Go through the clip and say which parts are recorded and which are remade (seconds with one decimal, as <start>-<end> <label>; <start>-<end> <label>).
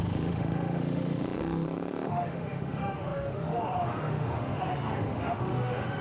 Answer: 0.0-6.0 remade